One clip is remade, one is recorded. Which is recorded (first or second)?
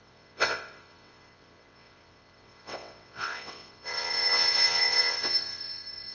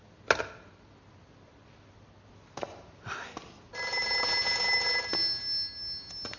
second